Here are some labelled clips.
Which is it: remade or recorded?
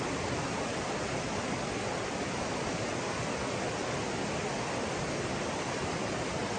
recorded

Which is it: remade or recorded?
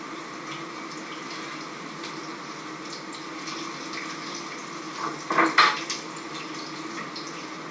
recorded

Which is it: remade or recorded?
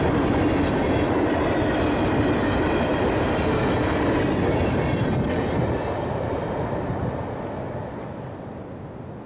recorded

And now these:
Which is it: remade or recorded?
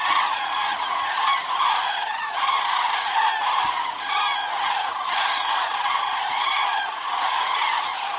remade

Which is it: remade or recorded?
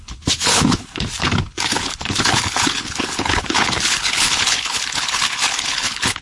remade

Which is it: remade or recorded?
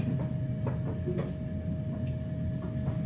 recorded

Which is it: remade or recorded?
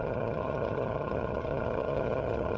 remade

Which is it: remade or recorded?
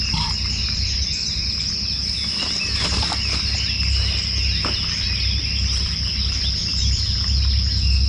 recorded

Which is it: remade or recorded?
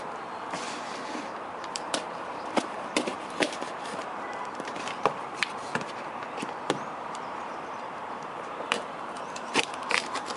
remade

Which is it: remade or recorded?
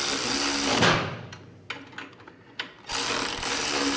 recorded